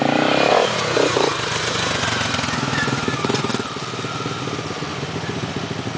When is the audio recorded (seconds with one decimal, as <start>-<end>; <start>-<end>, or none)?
0.0-0.5; 3.5-4.9; 5.5-6.0